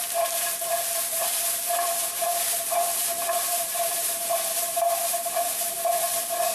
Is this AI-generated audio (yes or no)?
yes